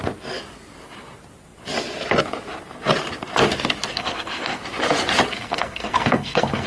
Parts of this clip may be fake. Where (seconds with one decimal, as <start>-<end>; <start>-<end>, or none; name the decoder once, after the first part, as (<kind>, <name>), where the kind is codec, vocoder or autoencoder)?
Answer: 3.9-4.6 (codec, SNAC); 5.3-6.7